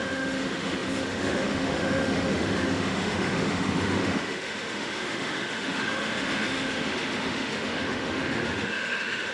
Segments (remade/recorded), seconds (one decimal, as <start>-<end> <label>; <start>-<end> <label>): 0.0-9.3 remade